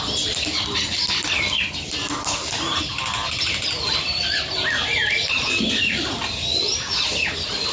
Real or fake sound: real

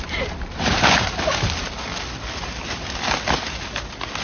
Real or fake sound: real